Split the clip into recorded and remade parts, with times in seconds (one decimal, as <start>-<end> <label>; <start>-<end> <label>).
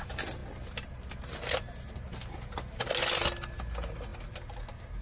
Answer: 0.0-5.0 recorded